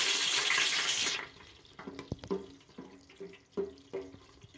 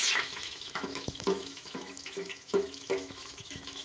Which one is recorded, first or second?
first